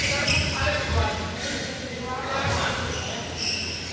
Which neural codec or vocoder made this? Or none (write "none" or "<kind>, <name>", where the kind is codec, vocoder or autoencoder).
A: none